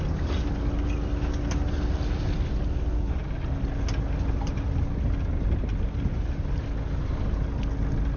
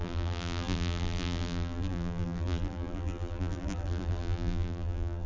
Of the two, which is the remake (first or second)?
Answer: second